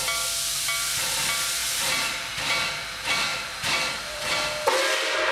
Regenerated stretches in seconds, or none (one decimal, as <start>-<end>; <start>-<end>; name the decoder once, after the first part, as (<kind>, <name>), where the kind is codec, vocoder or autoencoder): 1.6-2.3 (vocoder, BigVGAN v2); 3.3-4.3